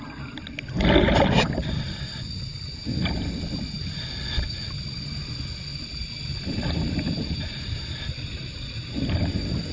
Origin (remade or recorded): recorded